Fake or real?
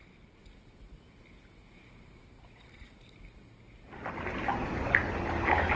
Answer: real